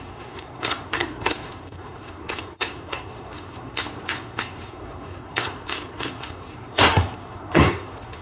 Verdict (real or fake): fake